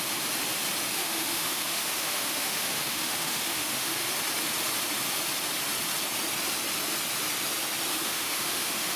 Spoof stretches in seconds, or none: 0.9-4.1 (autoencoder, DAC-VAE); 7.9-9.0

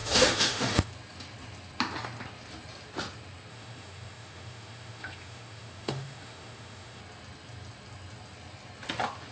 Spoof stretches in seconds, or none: 0.0-0.9 (autoencoder, DAC-VAE); 3.5-7.0

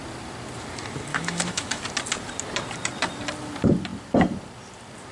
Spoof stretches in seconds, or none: 1.1-1.8 (autoencoder, DAC-VAE)

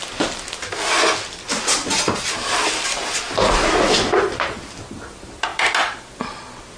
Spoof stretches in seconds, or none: none

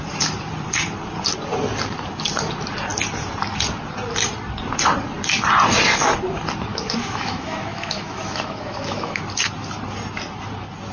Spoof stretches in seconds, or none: 6.7-9.2 (autoencoder, DAC-VAE)

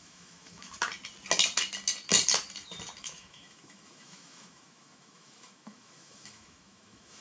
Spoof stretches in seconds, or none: 0.0-0.7 (autoencoder, DAC-VAE); 3.0-7.2

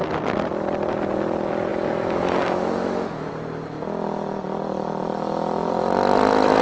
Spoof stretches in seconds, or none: 1.7-3.3 (autoencoder, DAC-VAE); 5.1-5.7